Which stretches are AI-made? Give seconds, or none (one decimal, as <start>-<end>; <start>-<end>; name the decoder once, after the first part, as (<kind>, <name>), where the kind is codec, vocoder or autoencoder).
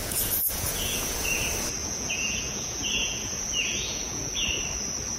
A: 0.0-1.4 (vocoder, Vocos); 1.8-4.5